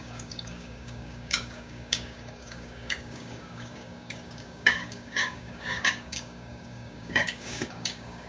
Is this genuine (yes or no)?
no